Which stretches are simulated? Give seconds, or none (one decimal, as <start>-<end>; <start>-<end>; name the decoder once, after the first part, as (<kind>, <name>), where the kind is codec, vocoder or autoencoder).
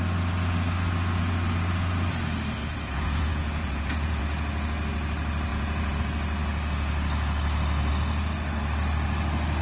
2.6-4.2 (vocoder, Vocos); 5.5-6.0